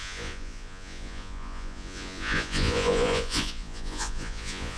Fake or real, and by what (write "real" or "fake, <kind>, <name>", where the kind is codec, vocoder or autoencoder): fake, vocoder, Vocos